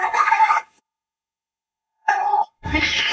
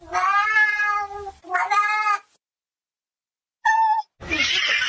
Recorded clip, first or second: second